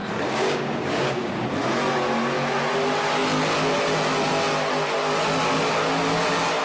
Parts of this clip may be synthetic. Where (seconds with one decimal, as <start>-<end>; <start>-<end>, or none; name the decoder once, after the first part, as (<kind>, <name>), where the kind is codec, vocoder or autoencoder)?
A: 0.0-1.3 (codec, DAC)